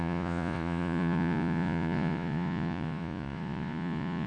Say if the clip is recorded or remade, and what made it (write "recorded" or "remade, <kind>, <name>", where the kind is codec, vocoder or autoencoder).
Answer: remade, vocoder, Vocos